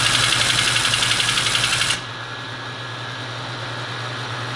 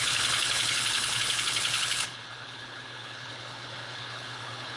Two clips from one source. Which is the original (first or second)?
first